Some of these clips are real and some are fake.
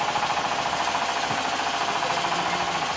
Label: real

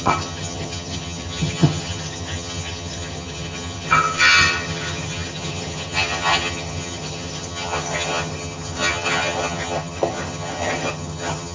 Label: fake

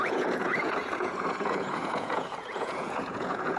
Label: fake